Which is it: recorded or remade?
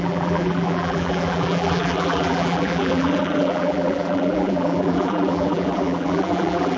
remade